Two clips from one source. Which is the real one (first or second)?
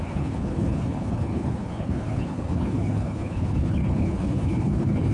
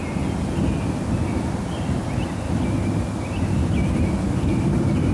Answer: second